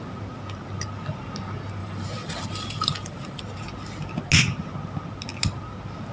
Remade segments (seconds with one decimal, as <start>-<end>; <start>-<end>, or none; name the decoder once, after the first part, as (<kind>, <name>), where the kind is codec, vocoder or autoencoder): 1.8-3.4 (vocoder, BigVGAN v2)